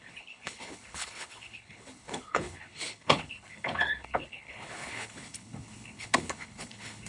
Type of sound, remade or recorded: remade